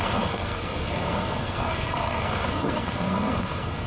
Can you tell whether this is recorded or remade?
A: remade